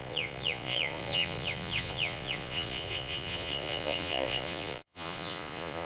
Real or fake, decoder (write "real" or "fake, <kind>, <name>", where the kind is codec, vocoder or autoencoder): fake, vocoder, Vocos